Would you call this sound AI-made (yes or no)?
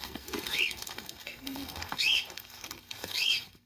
yes